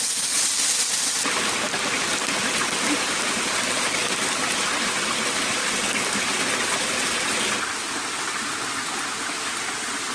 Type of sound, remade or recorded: recorded